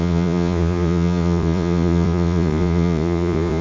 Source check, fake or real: fake